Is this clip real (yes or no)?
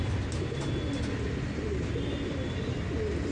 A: yes